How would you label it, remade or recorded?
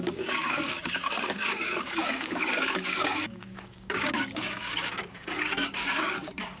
remade